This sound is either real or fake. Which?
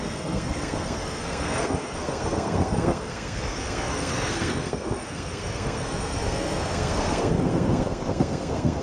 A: fake